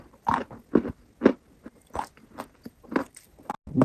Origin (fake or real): real